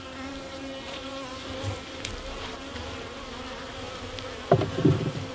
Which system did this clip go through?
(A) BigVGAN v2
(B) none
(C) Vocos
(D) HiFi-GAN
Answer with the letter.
B